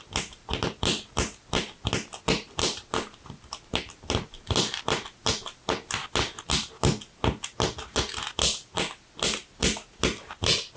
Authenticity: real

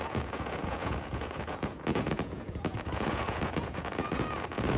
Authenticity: fake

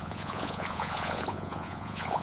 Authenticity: fake